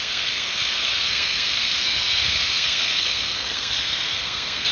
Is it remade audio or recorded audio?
remade